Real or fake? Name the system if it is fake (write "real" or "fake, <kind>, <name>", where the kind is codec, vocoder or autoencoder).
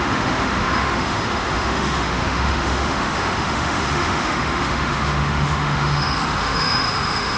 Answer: fake, autoencoder, DAC-VAE